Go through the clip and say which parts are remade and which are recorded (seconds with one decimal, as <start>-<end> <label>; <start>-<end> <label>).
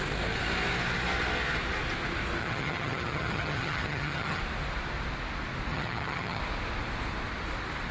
0.0-2.4 recorded; 2.4-4.4 remade; 4.4-5.7 recorded; 5.7-6.4 remade; 6.4-7.9 recorded